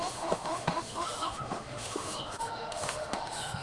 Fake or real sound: fake